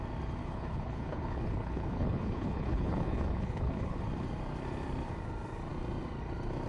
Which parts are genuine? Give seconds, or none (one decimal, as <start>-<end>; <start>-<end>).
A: 0.0-0.4; 4.0-6.7